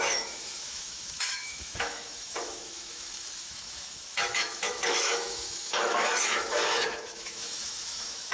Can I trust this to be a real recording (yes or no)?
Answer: no